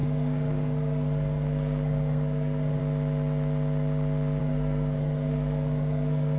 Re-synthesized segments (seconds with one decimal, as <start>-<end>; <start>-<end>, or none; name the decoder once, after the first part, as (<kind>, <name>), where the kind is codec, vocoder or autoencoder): 0.0-2.8 (codec, SNAC); 4.4-6.4